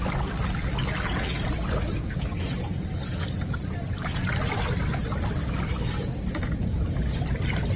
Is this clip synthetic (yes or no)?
no